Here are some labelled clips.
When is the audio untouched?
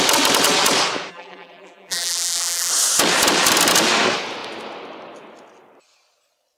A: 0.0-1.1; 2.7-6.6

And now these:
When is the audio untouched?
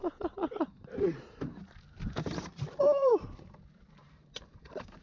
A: 0.0-0.9; 1.5-2.4; 3.1-4.0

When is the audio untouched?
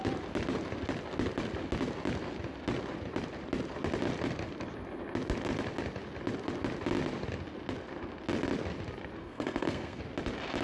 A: 0.0-9.2; 10.0-10.6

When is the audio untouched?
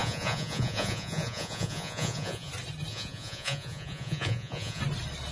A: 2.5-2.9; 4.8-5.3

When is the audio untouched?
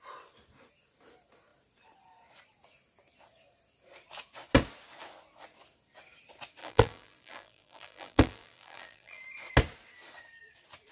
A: 0.0-6.6; 9.2-10.9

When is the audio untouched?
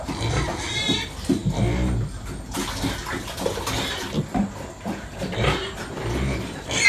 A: 0.0-6.9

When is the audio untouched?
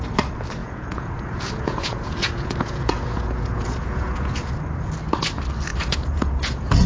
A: 0.0-0.6; 4.5-5.7